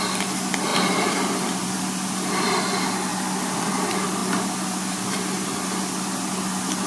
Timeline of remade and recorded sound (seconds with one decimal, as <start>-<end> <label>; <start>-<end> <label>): 0.0-0.7 recorded; 0.7-1.8 remade; 1.8-3.1 recorded; 3.1-3.7 remade; 3.7-6.9 recorded